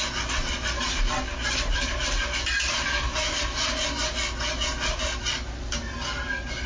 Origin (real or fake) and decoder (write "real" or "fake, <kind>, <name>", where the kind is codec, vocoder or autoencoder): real